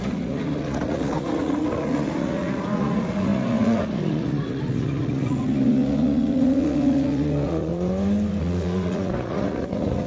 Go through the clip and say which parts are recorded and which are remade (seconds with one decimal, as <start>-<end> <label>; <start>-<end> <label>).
0.0-7.7 remade; 7.7-8.4 recorded; 8.4-10.1 remade